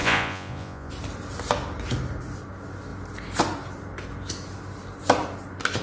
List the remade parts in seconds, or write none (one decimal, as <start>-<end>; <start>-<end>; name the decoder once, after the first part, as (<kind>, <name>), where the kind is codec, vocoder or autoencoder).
0.0-0.9 (vocoder, Vocos)